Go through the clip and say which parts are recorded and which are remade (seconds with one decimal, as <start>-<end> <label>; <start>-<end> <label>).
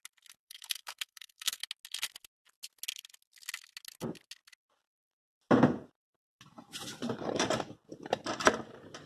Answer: 0.0-0.4 recorded; 0.4-1.6 remade; 1.6-9.1 recorded